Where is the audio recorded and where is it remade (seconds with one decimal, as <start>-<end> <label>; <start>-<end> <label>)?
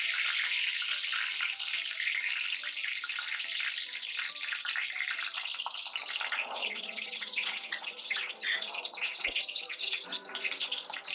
0.0-6.4 recorded; 6.4-11.1 remade